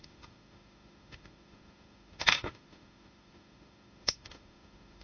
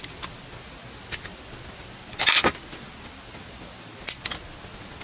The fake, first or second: first